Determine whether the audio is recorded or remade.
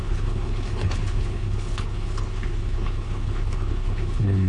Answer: remade